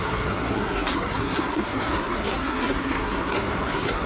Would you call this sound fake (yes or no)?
yes